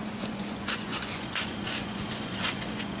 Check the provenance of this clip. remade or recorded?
remade